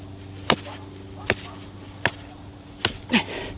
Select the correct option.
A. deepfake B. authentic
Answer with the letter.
B